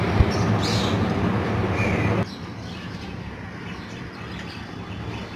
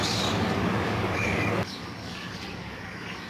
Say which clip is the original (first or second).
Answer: first